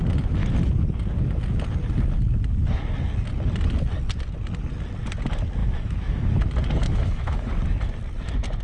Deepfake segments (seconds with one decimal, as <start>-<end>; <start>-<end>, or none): 5.6-6.3; 6.8-7.5